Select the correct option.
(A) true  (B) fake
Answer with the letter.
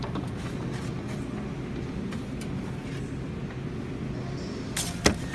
A